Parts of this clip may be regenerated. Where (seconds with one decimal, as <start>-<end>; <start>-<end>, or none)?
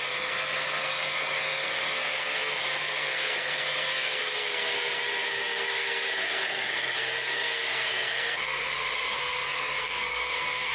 0.0-10.7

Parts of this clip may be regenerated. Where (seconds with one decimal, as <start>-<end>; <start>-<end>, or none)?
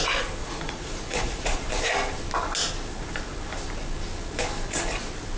0.4-1.6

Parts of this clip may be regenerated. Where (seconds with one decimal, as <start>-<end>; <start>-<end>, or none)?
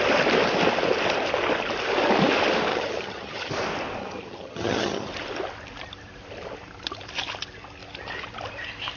2.7-3.5; 4.0-5.1